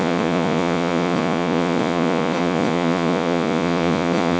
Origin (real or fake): fake